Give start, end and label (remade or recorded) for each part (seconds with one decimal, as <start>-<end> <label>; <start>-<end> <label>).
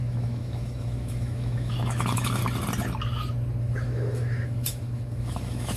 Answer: 0.0-2.4 remade; 2.4-3.6 recorded; 3.6-5.8 remade